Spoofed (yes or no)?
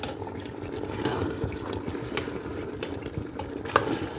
no